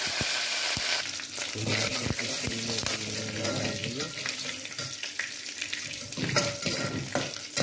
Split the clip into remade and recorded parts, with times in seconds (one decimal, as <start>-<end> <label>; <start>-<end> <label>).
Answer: 0.0-7.6 recorded